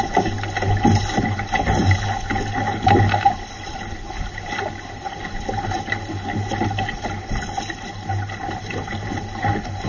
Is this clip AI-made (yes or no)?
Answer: no